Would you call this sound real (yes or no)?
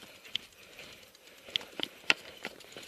no